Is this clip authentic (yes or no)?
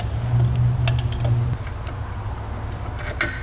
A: yes